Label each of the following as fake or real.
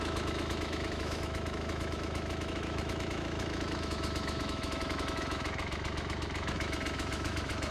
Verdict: fake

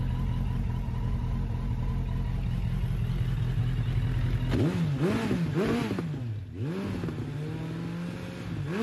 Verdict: real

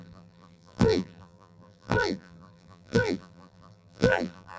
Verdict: fake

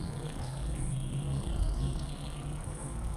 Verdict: fake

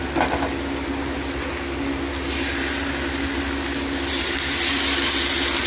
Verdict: real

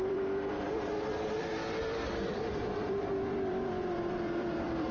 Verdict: fake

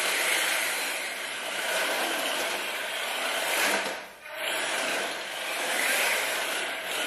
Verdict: fake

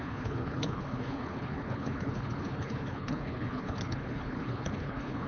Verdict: fake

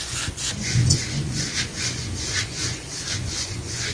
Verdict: fake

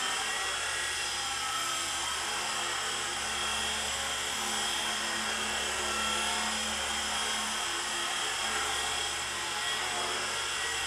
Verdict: real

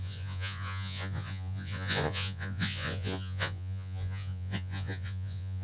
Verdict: fake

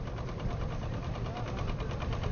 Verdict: fake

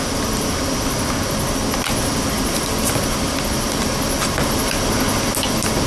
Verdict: real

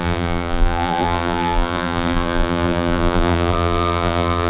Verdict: fake